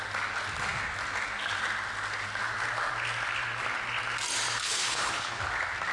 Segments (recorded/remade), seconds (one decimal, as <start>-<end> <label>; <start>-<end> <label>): 0.0-4.6 recorded; 4.6-5.4 remade; 5.4-5.9 recorded